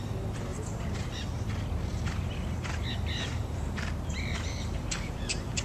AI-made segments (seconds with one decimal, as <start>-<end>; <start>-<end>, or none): 0.5-1.2; 1.9-5.6